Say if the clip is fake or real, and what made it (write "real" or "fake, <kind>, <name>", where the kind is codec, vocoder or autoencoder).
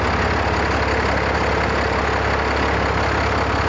real